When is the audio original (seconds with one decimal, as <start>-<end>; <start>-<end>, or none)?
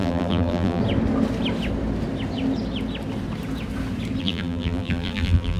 0.8-4.2